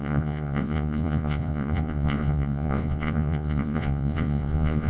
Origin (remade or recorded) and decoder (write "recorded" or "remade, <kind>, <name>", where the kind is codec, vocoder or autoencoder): remade, vocoder, Vocos